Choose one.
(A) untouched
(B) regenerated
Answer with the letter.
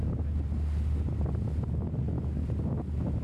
A